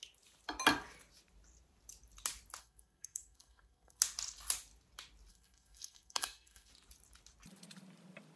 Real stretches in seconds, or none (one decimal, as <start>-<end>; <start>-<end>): 0.0-2.6; 4.0-5.3; 6.7-8.4